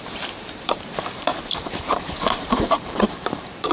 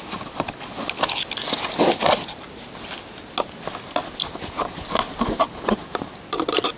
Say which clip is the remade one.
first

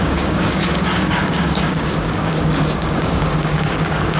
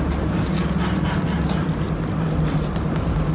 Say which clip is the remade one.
first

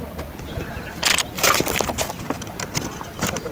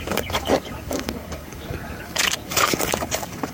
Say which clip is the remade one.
second